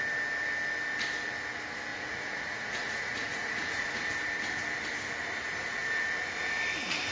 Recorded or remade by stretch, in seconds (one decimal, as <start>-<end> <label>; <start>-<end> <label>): 0.0-1.9 recorded; 1.9-3.9 remade; 3.9-7.1 recorded

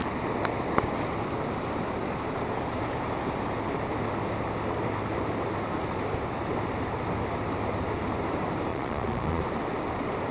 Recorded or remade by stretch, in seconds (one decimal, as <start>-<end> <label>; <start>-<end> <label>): 0.0-8.7 recorded; 8.7-9.4 remade; 9.4-10.3 recorded

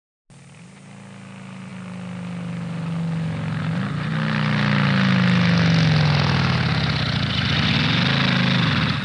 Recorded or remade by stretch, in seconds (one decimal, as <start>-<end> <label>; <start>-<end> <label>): 0.0-9.0 recorded

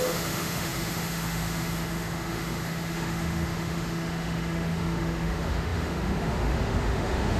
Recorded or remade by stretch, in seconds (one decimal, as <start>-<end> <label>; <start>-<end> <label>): 0.0-7.4 remade